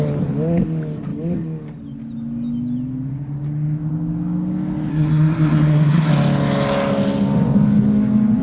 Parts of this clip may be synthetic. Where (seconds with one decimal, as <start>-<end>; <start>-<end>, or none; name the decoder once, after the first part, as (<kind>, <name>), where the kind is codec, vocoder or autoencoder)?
4.9-6.1 (codec, SNAC)